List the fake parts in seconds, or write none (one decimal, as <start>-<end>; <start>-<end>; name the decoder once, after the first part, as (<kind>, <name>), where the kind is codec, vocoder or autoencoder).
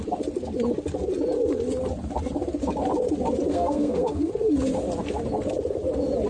3.5-4.3 (codec, SNAC)